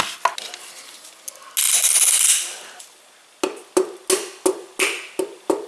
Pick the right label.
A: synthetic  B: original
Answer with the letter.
B